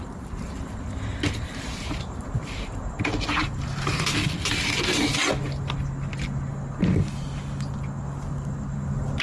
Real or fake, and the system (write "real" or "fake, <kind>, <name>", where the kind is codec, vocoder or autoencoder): real